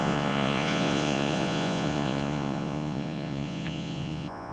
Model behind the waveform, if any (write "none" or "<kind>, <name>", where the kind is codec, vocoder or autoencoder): vocoder, Vocos